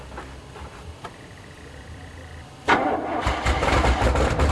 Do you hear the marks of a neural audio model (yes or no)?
yes